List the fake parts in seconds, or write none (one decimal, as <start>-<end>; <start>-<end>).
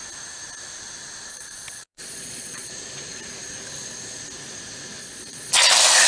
1.3-2.7; 5.0-5.5